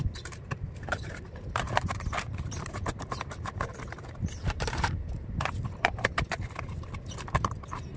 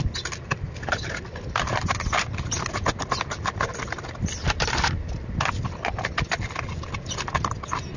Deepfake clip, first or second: first